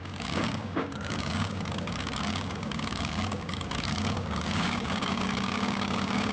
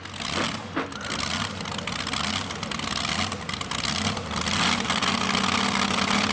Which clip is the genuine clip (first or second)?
second